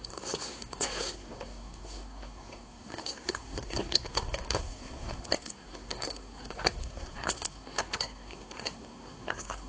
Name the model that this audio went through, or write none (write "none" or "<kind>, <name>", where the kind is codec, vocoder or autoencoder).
codec, SNAC